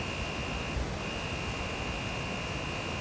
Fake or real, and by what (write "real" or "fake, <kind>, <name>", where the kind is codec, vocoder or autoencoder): real